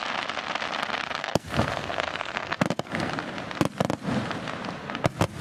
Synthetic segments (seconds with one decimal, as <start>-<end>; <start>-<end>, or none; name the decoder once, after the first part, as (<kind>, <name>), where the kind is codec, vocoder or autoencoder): 1.2-3.1 (codec, SNAC)